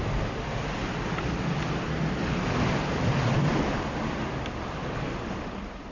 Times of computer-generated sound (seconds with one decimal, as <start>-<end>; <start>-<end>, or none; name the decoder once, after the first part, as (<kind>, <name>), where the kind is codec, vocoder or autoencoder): none